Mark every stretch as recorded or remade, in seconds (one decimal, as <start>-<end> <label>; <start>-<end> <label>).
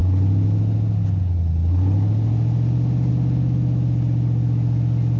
0.0-5.2 recorded